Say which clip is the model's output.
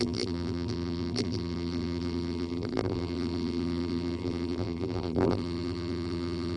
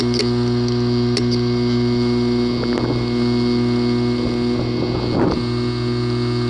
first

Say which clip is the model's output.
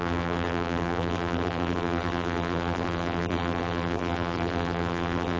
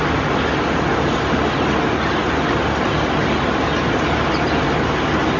first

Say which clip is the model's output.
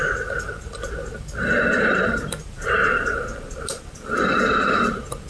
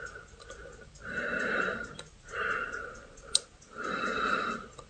first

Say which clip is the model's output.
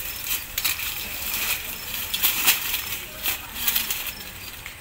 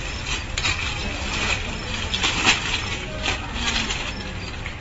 first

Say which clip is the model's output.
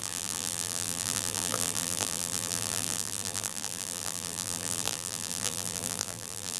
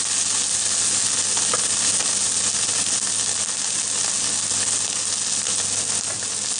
first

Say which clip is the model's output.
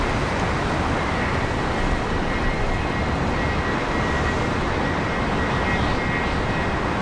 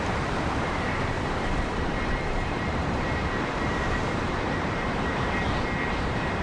second